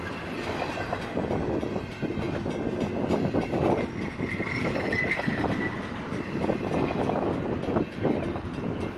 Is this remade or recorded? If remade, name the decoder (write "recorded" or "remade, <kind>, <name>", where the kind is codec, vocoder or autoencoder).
recorded